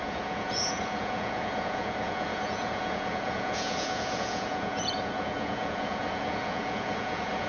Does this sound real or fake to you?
fake